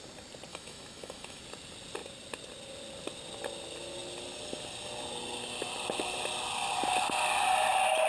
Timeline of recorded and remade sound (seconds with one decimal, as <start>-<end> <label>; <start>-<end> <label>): 0.0-0.5 recorded; 0.5-1.4 remade; 1.4-8.1 recorded